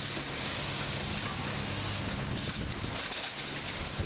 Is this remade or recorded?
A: recorded